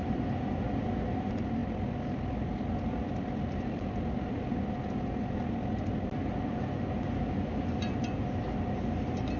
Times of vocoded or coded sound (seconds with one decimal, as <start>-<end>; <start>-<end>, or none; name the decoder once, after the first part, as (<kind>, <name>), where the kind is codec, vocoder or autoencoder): none